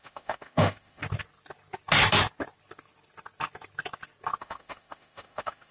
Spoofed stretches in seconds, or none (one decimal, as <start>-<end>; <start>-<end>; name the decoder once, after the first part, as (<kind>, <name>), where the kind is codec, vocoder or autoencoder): 0.0-1.0 (autoencoder, DAC-VAE); 4.4-5.7